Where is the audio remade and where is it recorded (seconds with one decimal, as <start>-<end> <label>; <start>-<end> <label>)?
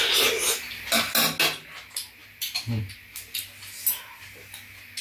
0.0-5.0 recorded